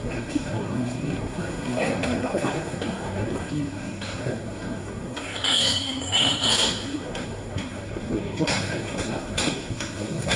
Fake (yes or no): yes